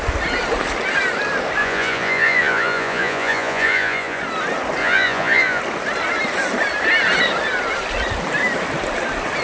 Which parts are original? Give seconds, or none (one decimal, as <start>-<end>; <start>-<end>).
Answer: 0.0-1.6; 4.2-4.8; 5.6-9.4